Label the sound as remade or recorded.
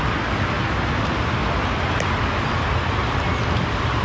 recorded